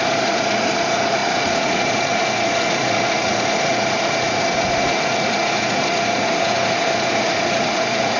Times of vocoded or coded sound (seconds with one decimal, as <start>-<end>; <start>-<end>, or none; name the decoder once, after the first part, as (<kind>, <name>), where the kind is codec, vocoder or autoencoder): 0.0-8.2 (vocoder, Vocos)